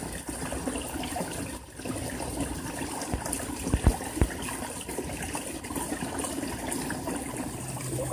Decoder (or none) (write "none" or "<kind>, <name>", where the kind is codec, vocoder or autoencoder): none